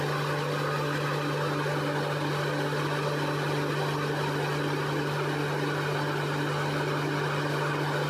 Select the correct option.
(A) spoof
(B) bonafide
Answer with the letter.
B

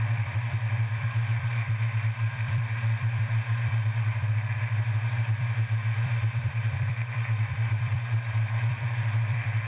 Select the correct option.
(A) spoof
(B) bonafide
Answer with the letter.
A